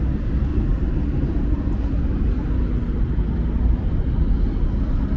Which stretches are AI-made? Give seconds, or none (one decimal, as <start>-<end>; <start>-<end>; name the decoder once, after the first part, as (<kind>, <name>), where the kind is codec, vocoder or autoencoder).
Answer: 0.5-1.3 (vocoder, BigVGAN v2)